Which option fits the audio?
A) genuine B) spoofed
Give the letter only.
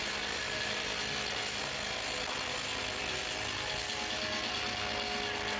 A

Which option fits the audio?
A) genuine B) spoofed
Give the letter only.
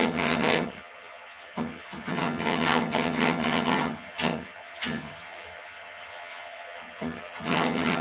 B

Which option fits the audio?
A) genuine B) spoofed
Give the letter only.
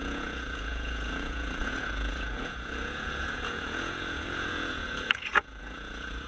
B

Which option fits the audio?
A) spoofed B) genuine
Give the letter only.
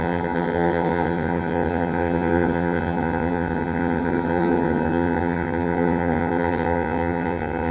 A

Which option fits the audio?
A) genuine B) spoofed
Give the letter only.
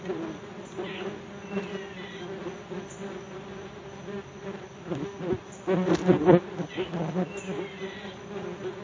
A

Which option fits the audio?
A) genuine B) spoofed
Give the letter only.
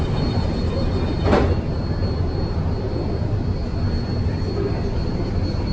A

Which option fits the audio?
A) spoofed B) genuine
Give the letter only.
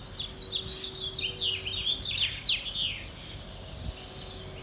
B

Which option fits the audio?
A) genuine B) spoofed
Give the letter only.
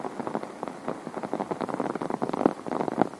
A